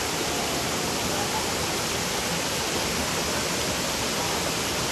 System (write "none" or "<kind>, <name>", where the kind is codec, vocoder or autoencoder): vocoder, BigVGAN v2